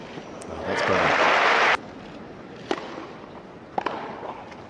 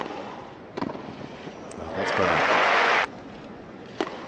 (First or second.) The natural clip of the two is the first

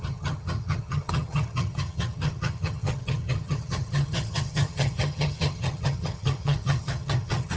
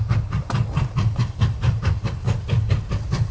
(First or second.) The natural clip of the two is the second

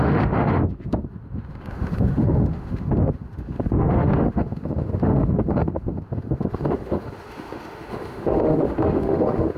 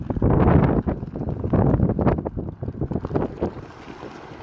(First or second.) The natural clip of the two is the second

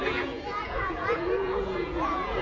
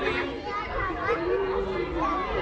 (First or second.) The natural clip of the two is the second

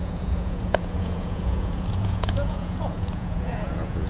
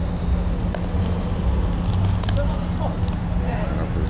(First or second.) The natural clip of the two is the second